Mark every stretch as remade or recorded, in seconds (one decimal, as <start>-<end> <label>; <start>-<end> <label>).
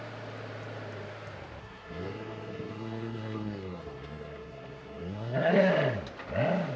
0.0-1.6 recorded; 1.6-5.7 remade; 5.7-6.8 recorded